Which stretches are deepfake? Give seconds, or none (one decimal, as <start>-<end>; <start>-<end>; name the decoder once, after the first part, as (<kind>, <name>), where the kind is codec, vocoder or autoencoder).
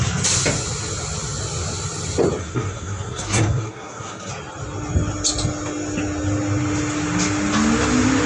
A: 2.4-4.3 (codec, SNAC)